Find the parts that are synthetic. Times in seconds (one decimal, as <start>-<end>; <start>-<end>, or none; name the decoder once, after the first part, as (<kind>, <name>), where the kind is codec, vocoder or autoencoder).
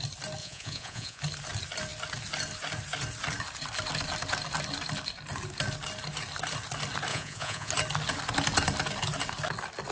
0.4-1.2 (vocoder, Vocos); 7.1-7.7